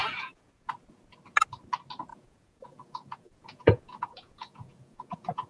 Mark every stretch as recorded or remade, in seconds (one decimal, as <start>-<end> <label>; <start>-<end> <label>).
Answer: 0.0-0.7 remade; 0.7-2.1 recorded; 2.1-5.5 remade